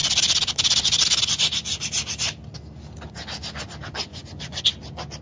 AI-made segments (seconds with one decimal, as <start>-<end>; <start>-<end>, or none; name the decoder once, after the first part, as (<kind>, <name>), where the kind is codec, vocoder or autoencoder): 4.1-4.6 (vocoder, Vocos)